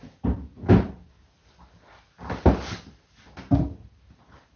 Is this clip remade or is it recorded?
recorded